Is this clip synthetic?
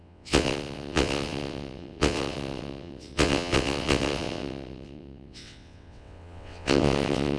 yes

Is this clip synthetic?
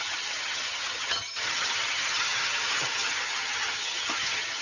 yes